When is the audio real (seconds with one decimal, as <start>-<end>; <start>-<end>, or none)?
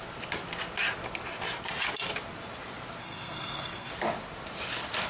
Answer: 0.0-3.0; 3.9-5.1